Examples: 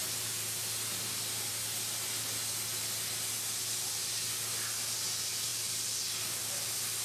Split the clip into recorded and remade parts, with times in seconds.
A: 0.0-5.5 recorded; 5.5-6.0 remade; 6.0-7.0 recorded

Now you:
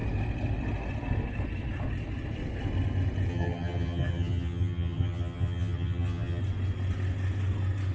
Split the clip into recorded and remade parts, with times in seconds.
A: 0.0-3.3 recorded; 3.3-6.4 remade; 6.4-7.9 recorded

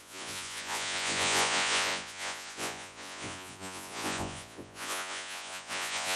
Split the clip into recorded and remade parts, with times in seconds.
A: 0.0-6.2 remade

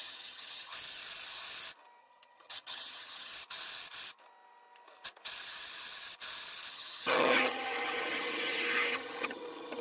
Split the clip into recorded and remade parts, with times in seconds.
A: 0.0-0.7 remade; 0.7-2.0 recorded; 2.0-3.3 remade; 3.3-6.7 recorded; 6.7-9.8 remade

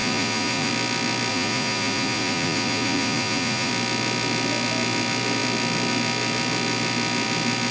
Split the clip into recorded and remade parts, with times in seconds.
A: 0.0-0.7 remade; 0.7-1.3 recorded; 1.3-3.7 remade; 3.7-7.7 recorded

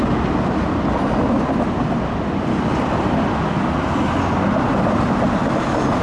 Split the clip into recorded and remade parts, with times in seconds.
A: 0.0-6.0 recorded